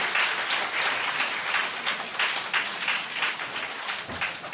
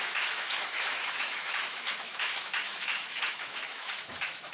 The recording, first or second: first